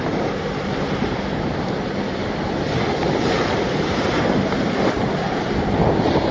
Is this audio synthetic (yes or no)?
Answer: no